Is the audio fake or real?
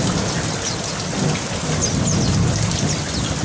real